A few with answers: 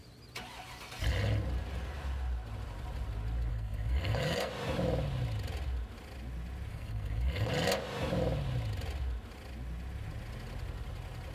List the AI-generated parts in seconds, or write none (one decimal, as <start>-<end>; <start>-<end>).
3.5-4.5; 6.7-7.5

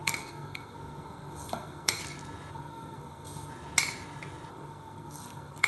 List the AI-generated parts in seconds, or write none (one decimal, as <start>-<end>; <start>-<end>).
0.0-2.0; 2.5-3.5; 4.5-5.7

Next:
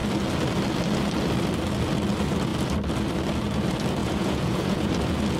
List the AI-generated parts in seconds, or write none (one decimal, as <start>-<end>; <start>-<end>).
4.0-4.9

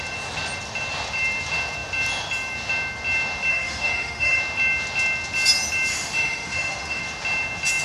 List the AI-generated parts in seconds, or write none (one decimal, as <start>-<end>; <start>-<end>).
3.5-4.4; 5.9-7.0

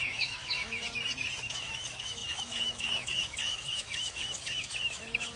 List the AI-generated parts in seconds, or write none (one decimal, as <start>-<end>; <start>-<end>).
0.0-0.8; 1.4-5.4

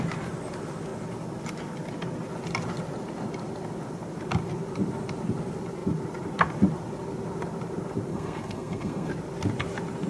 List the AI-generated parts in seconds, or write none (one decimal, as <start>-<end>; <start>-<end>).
8.1-9.1

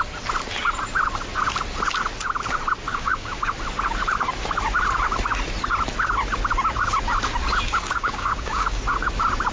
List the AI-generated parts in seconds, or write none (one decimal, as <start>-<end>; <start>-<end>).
2.9-3.4; 7.6-8.8

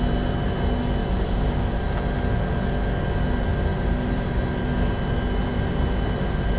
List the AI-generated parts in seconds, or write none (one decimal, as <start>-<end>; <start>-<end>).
1.0-1.8; 3.7-4.4; 5.5-6.6